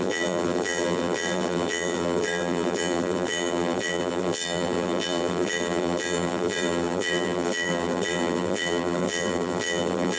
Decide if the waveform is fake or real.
fake